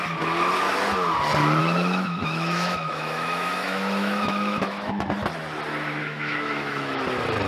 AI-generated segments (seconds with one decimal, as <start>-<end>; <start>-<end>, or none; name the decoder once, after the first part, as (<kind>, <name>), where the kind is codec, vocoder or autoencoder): 1.6-4.9 (autoencoder, DAC-VAE); 6.0-7.0